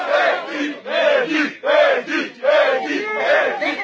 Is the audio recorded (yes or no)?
yes